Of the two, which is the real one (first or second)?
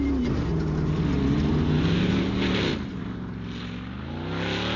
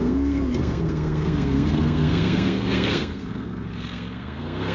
first